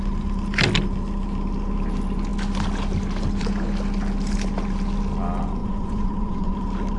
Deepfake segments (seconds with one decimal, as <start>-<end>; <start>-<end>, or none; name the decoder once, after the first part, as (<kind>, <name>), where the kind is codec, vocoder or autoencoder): 5.6-6.5 (vocoder, Vocos)